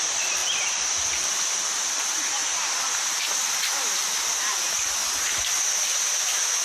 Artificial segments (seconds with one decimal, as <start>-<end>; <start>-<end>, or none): 0.4-2.0